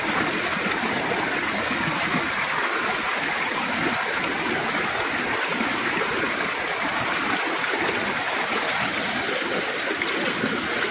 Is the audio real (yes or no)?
yes